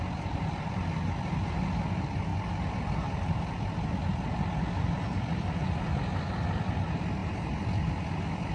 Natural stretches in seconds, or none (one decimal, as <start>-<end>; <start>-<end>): 0.0-8.5